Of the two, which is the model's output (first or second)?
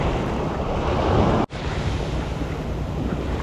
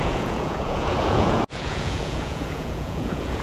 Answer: second